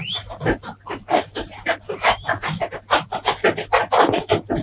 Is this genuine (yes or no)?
yes